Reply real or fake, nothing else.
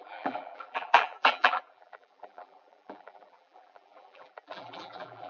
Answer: fake